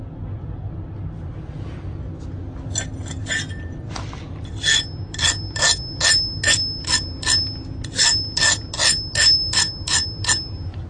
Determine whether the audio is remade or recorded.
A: recorded